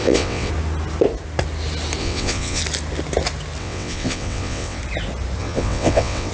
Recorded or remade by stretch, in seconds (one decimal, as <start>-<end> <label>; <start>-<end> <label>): 0.0-0.5 remade; 0.5-2.0 recorded; 2.0-2.6 remade; 2.6-3.6 recorded; 3.6-4.8 remade; 4.8-5.4 recorded; 5.4-6.3 remade